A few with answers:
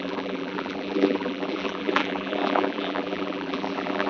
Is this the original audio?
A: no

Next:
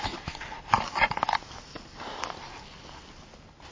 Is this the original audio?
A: yes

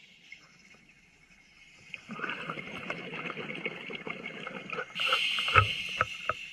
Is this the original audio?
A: yes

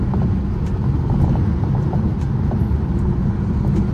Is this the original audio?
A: yes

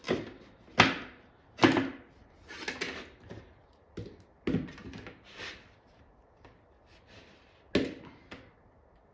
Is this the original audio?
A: yes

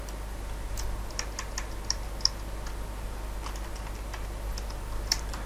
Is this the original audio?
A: yes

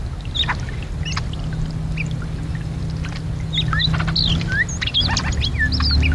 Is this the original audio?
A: yes